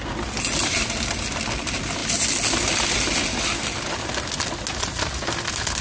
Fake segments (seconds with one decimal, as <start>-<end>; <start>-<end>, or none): none